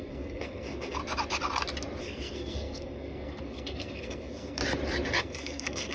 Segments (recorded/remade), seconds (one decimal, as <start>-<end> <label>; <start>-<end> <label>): 0.0-1.0 remade; 1.0-2.0 recorded; 2.0-4.6 remade; 4.6-5.2 recorded; 5.2-5.9 remade